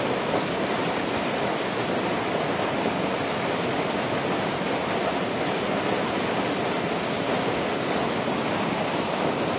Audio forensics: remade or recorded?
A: recorded